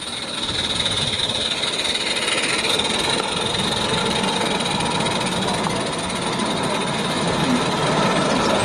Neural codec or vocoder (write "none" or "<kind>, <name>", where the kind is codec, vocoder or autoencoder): none